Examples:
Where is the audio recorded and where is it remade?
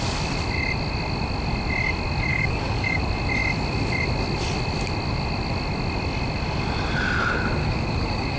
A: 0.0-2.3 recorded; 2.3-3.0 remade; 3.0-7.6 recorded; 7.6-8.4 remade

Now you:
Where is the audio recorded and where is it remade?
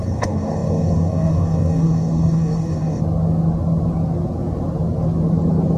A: 0.0-3.0 remade; 3.0-5.8 recorded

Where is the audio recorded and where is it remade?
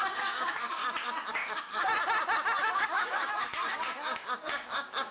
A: 0.0-0.8 remade; 0.8-1.3 recorded; 1.3-1.9 remade; 1.9-2.6 recorded; 2.6-5.1 remade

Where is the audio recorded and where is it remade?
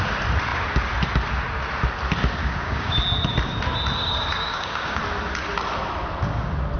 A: 0.0-2.4 recorded; 2.4-3.0 remade; 3.0-4.0 recorded; 4.0-5.0 remade; 5.0-6.8 recorded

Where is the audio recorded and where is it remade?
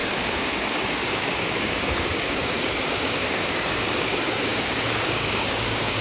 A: 0.0-6.0 remade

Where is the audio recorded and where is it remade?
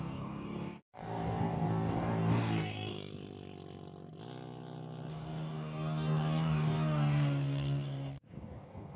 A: 0.0-3.1 remade; 3.1-5.1 recorded; 5.1-9.0 remade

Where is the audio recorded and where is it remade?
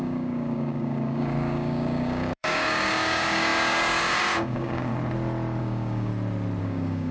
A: 0.0-4.9 remade; 4.9-5.6 recorded; 5.6-6.1 remade; 6.1-6.6 recorded; 6.6-7.1 remade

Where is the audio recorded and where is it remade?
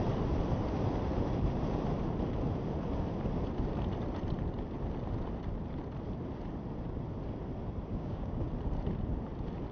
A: 0.0-7.9 recorded; 7.9-8.5 remade; 8.5-9.7 recorded